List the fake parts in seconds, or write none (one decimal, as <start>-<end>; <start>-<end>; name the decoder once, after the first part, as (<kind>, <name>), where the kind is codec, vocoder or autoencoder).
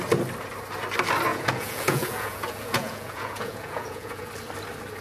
1.3-4.3 (vocoder, Vocos)